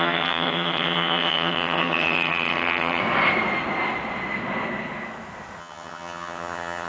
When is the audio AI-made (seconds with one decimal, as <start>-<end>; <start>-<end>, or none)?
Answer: 0.0-3.0; 5.6-6.9